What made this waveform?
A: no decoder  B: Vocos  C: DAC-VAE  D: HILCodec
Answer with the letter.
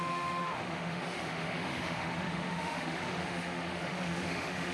C